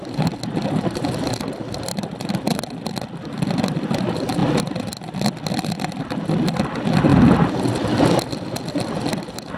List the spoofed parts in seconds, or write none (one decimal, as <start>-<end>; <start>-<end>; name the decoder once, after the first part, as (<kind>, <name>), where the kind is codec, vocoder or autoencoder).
none